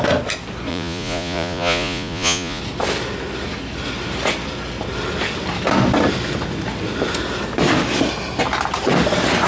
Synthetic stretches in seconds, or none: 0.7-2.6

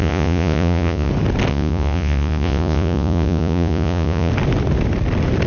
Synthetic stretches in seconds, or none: 0.0-1.1; 1.5-4.3

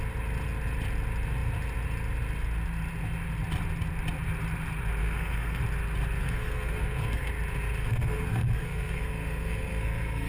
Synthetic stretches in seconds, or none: 5.0-5.6; 6.2-7.3; 7.8-10.3

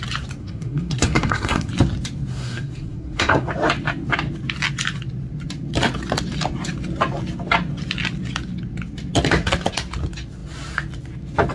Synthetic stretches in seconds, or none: 0.4-1.7; 2.3-3.5

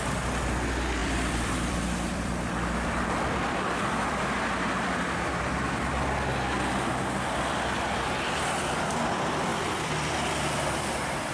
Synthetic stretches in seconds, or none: 1.0-4.2; 9.5-11.3

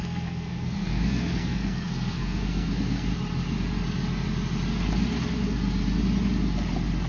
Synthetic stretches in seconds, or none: 0.0-3.1

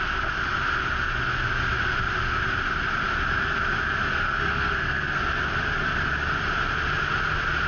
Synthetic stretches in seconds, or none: 4.1-5.2